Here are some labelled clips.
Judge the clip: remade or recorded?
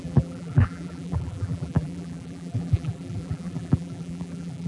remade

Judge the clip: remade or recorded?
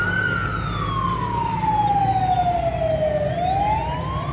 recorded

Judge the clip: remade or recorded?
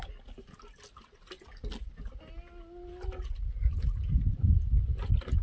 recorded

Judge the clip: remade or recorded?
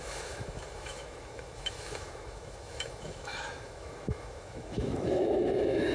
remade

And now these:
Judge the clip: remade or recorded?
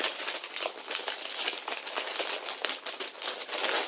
recorded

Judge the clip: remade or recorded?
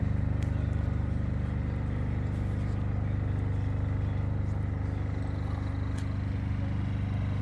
recorded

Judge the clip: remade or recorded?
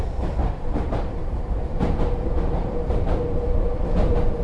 remade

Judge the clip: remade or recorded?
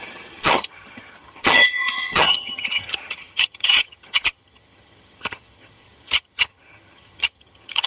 remade